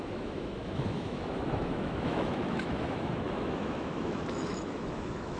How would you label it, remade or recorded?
remade